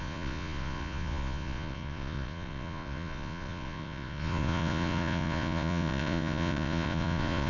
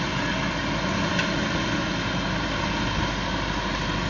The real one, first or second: second